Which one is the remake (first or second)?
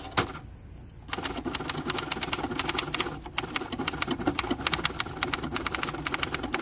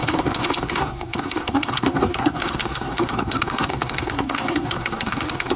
second